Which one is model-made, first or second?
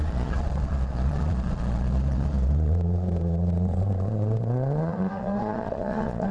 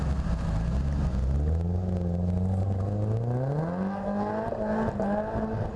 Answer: first